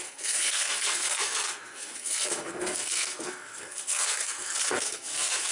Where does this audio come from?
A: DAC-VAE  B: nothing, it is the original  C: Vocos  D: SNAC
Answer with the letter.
D